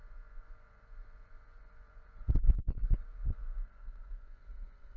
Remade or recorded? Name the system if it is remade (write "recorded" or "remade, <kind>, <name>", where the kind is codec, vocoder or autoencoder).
remade, vocoder, Vocos